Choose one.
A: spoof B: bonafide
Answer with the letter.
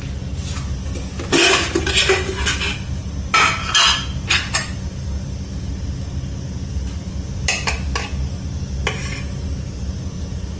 B